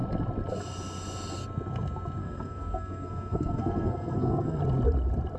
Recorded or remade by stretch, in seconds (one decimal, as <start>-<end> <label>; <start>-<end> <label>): 0.0-2.2 recorded; 2.2-4.6 remade; 4.6-5.4 recorded